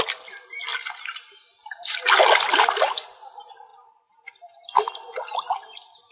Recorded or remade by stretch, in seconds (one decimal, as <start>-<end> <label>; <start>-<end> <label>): 0.0-6.1 recorded